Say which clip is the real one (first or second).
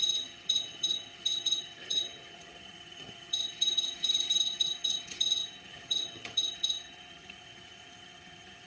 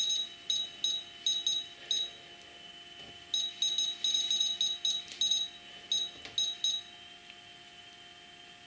second